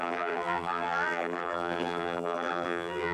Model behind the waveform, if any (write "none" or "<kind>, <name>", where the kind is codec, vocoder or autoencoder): vocoder, BigVGAN v2